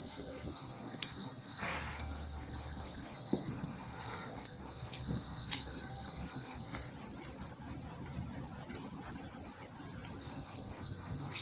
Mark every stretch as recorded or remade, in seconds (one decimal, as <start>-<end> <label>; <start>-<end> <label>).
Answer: 0.0-6.9 remade; 6.9-10.2 recorded; 10.2-11.4 remade